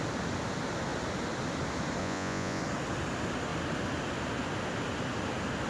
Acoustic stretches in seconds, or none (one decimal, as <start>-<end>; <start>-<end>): 0.0-2.0; 2.6-5.7